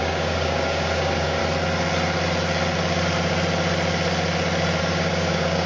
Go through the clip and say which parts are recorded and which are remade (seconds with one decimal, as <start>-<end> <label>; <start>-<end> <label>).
0.0-1.4 remade; 1.4-4.8 recorded; 4.8-5.7 remade